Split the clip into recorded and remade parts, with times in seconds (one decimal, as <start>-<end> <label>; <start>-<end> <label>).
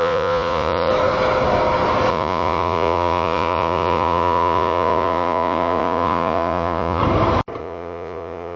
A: 0.0-0.9 remade; 0.9-2.1 recorded; 2.1-7.0 remade; 7.0-7.6 recorded; 7.6-8.6 remade